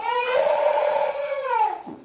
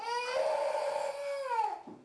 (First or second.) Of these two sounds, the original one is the second